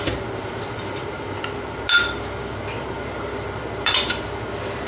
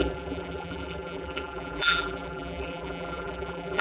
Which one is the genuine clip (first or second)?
first